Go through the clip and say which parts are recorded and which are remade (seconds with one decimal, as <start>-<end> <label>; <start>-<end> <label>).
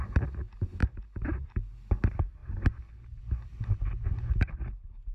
0.0-0.8 recorded; 0.8-1.6 remade; 1.6-5.1 recorded